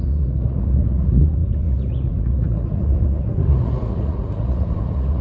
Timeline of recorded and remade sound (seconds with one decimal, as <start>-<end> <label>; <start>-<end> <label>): 0.0-5.2 remade